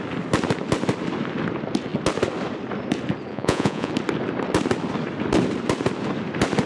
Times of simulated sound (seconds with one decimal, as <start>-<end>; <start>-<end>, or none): 3.3-3.9